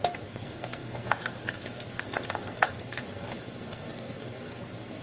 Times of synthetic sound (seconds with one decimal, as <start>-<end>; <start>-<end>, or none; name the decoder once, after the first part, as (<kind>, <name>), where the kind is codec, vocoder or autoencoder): 0.0-5.0 (codec, SNAC)

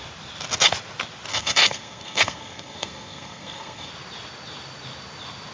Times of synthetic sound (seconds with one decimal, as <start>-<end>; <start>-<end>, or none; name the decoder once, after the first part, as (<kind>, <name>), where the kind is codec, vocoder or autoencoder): 1.3-3.9 (codec, SNAC)

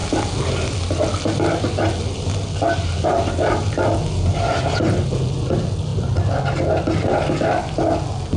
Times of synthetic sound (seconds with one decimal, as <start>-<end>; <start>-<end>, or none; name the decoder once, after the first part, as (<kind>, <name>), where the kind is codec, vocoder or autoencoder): none

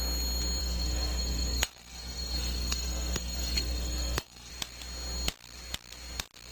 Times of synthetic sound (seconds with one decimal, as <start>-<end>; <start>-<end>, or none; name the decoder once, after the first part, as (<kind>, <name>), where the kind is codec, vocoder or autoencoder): 0.6-4.5 (codec, SNAC)

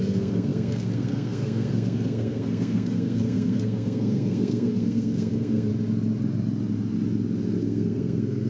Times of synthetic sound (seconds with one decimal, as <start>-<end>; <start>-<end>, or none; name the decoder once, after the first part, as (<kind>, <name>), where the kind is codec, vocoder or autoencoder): 0.0-5.7 (codec, SNAC); 7.6-8.5

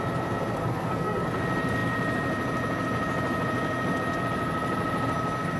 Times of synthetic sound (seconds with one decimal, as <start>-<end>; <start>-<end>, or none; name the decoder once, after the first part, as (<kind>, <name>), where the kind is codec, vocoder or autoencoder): 0.6-1.2 (codec, SNAC)